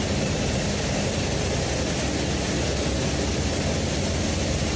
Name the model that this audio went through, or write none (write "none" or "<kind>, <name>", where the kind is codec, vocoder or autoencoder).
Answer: none